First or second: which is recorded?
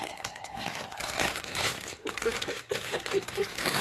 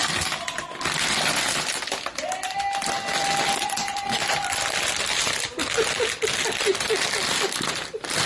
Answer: second